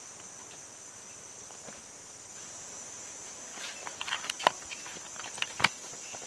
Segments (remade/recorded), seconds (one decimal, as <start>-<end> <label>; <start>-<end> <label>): 0.0-0.4 recorded; 0.4-1.2 remade; 1.2-1.8 recorded; 1.8-2.6 remade; 2.6-3.5 recorded; 3.5-5.6 remade; 5.6-6.3 recorded